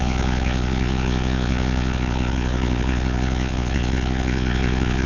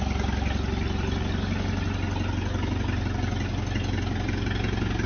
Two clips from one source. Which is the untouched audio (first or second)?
second